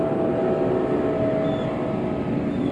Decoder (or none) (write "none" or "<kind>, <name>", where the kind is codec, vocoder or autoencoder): none